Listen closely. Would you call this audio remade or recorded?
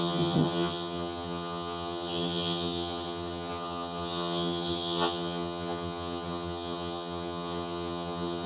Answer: remade